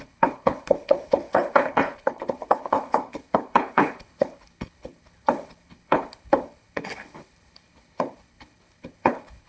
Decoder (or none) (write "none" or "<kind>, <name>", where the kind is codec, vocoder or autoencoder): codec, HILCodec